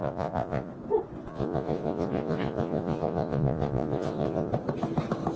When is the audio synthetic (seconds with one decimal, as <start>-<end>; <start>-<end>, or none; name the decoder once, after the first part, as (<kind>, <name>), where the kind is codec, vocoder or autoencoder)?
0.0-0.7 (vocoder, Vocos); 1.3-4.5